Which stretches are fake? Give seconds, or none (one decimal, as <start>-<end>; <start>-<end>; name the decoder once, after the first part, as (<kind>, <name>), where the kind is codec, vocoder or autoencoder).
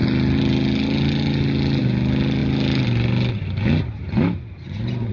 none